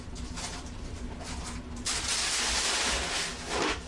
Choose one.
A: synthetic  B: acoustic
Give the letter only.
B